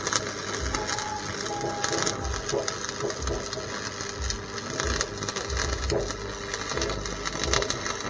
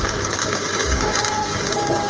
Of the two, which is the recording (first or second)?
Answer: first